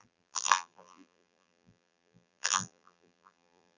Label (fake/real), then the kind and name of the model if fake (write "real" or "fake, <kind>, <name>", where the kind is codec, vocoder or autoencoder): fake, vocoder, BigVGAN v2